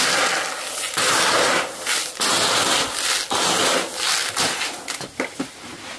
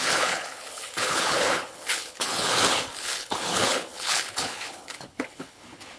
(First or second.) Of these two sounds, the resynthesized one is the second